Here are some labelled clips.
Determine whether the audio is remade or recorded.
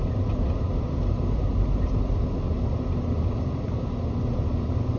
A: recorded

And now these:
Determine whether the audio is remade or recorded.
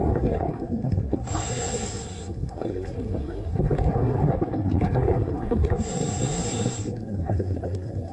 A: remade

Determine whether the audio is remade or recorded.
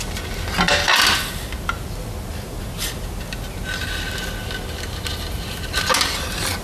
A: recorded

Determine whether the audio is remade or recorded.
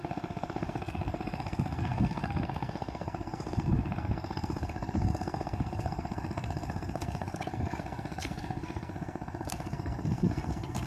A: remade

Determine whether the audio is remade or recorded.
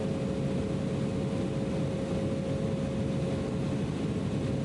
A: recorded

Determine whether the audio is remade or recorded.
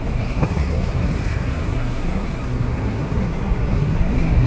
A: remade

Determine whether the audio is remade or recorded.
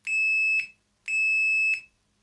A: recorded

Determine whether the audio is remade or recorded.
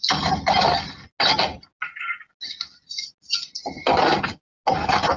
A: recorded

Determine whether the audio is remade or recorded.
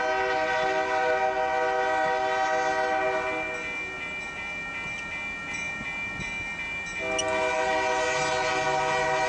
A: recorded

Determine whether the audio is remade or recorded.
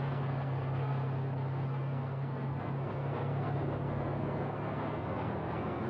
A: remade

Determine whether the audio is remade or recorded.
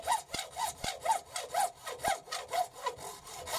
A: recorded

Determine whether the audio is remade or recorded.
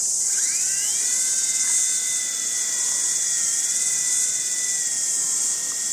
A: recorded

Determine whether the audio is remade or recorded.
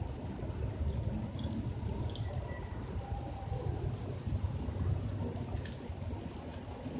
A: recorded